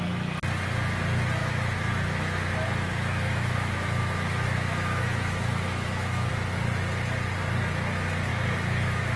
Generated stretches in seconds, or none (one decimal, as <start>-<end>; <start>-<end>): 1.4-6.3; 8.3-9.2